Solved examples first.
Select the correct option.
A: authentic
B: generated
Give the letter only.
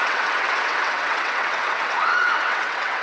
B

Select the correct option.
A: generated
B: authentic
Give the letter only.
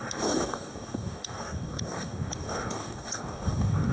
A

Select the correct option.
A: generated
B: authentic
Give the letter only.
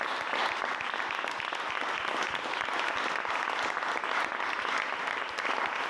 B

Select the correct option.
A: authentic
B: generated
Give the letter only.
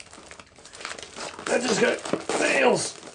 A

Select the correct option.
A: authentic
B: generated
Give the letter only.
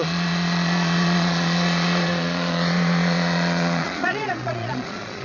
B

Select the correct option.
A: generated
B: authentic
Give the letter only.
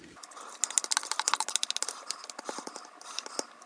B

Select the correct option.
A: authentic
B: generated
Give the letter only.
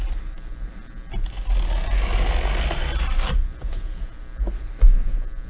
A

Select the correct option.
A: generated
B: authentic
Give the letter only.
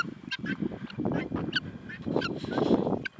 B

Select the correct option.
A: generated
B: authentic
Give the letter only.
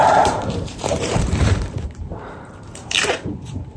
A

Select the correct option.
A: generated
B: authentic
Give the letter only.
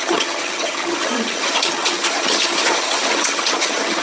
A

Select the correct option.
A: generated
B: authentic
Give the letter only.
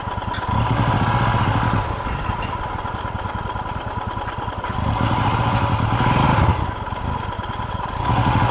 B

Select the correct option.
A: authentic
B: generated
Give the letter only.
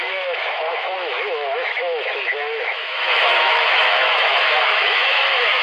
B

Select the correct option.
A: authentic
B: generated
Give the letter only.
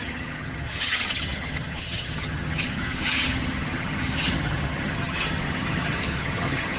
B